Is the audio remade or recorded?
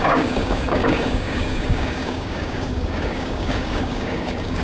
remade